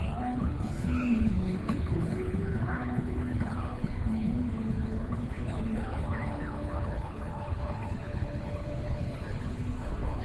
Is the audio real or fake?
fake